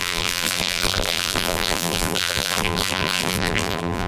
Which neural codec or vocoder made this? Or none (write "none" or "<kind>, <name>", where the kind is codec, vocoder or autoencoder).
vocoder, BigVGAN v2